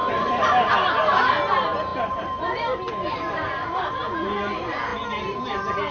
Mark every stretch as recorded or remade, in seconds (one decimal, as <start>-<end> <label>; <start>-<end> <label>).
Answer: 0.0-5.9 recorded